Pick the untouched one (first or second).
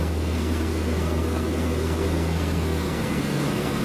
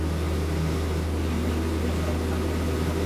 second